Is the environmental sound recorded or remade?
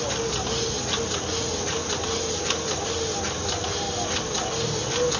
recorded